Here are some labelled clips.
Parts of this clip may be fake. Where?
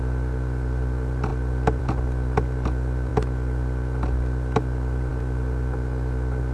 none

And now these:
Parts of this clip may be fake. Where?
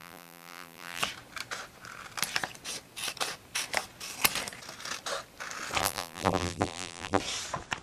0.0-1.0; 5.8-7.2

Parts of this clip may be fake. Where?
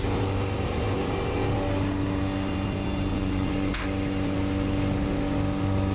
3.1-3.7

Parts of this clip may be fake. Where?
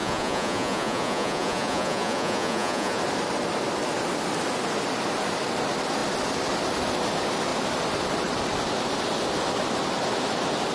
0.0-3.0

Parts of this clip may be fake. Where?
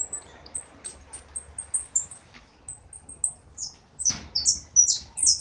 1.8-2.5; 3.4-4.1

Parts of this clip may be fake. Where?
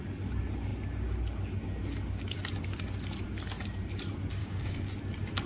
4.4-4.9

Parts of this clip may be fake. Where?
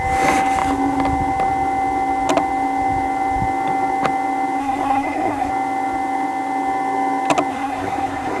4.6-5.5; 7.5-8.4